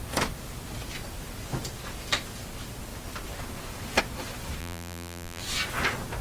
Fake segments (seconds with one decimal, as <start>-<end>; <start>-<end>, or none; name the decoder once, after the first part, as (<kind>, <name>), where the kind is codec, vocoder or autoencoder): 4.6-5.4 (vocoder, BigVGAN v2)